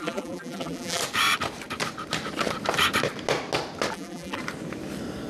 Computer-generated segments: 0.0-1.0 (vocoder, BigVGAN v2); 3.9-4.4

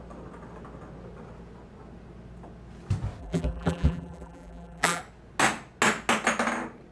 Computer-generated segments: 3.2-5.0 (vocoder, BigVGAN v2)

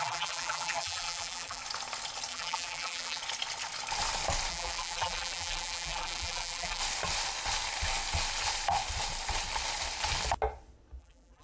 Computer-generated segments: 0.0-1.6 (vocoder, BigVGAN v2); 2.3-3.2; 4.5-6.8; 11.0-11.4

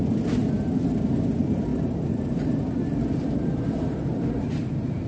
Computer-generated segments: 1.7-5.1 (vocoder, BigVGAN v2)